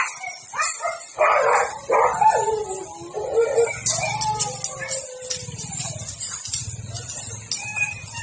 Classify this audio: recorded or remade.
recorded